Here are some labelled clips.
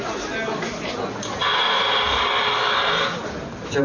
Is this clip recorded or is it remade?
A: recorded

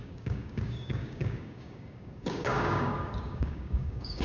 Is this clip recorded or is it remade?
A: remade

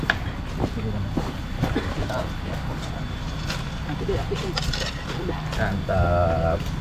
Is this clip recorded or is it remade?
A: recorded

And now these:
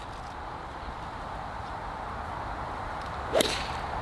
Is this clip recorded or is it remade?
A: recorded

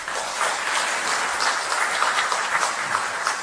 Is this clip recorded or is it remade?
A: recorded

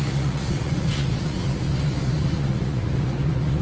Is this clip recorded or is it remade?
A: remade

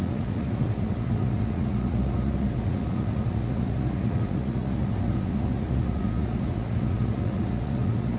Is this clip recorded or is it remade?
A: remade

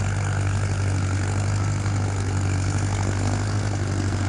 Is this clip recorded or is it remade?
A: remade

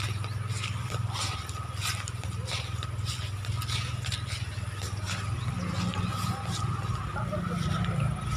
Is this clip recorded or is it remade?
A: recorded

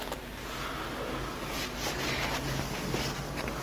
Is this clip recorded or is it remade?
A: recorded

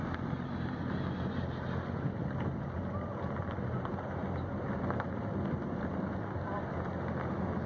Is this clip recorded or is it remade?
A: recorded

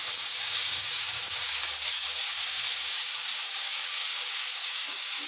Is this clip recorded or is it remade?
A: remade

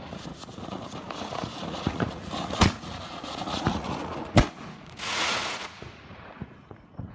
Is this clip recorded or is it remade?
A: remade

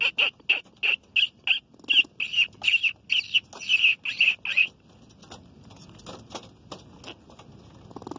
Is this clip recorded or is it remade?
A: recorded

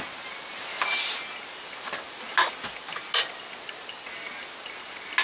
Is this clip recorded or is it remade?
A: recorded